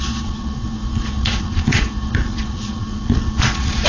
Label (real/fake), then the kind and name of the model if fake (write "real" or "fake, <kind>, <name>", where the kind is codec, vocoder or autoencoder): fake, vocoder, Vocos